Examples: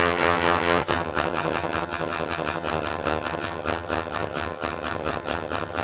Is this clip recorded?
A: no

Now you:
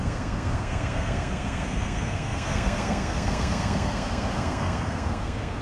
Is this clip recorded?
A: no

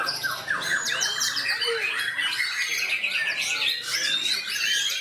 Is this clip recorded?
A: yes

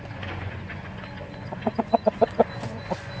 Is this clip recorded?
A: no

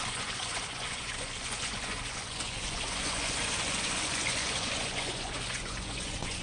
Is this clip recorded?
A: no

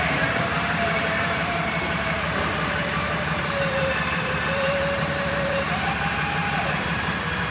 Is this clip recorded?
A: no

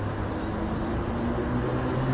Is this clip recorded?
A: yes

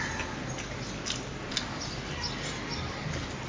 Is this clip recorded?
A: yes